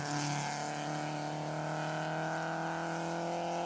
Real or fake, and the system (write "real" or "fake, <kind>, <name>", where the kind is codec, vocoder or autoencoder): real